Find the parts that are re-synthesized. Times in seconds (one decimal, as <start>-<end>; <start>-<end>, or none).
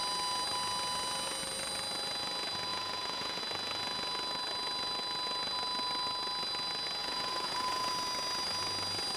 2.7-3.4; 7.0-7.9